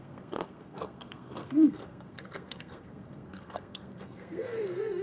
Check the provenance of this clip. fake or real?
fake